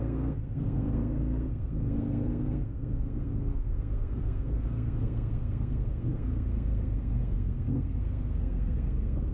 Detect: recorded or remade remade